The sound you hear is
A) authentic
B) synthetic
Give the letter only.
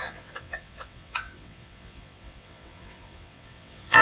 B